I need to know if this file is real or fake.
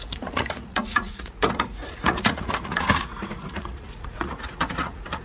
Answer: fake